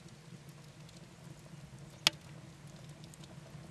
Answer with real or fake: real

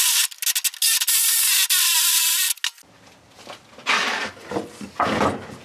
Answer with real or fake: real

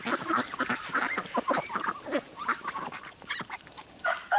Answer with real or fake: fake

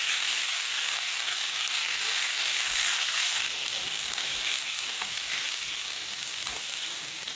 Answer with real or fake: fake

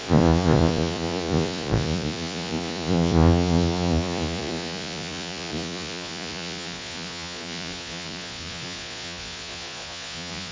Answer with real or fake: fake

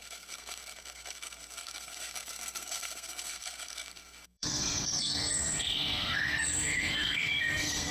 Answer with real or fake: fake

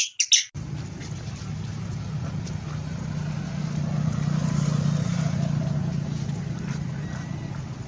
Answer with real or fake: real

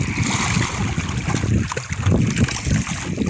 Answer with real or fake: real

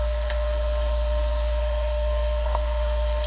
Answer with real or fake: fake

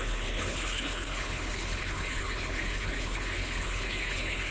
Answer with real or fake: fake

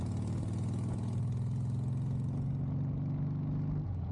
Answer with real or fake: real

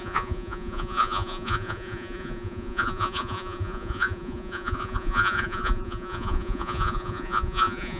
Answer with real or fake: fake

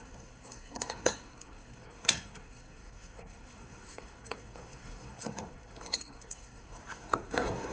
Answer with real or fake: fake